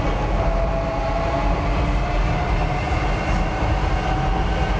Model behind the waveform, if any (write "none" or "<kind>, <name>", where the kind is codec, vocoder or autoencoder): none